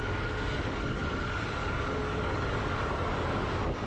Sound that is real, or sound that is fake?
fake